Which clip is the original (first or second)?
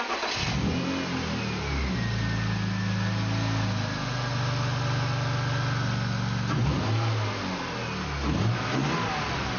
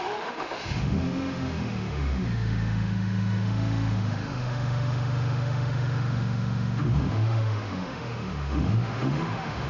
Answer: first